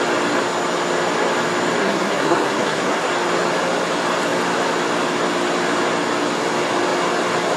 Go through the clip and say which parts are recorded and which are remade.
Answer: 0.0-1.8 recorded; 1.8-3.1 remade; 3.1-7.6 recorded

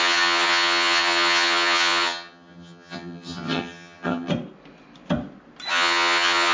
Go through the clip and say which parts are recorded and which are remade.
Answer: 0.0-4.3 remade; 4.3-5.7 recorded; 5.7-6.5 remade

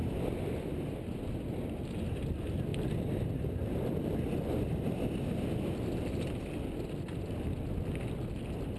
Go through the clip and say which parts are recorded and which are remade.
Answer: 0.0-8.8 recorded

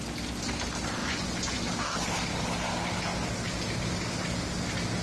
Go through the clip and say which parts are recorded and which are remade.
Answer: 0.0-1.0 recorded; 1.0-1.6 remade; 1.6-5.0 recorded

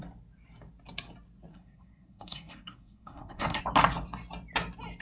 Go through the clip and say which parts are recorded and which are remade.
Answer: 0.0-1.5 recorded; 1.5-3.6 remade; 3.6-5.0 recorded

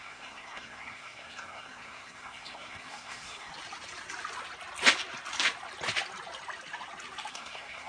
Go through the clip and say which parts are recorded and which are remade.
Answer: 0.0-3.5 remade; 3.5-7.3 recorded; 7.3-7.9 remade

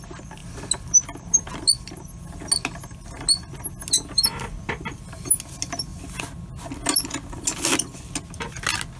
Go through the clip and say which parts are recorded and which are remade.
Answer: 0.0-9.0 recorded